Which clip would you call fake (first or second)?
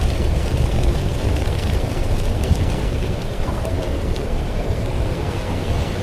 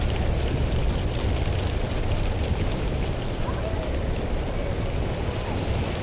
first